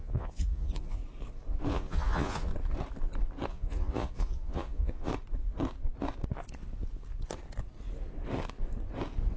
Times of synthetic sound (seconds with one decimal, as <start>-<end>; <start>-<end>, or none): 0.0-1.0; 1.7-2.5; 3.5-5.1